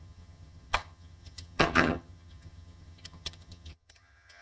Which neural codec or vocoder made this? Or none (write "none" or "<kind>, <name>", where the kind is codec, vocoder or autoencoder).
vocoder, HiFi-GAN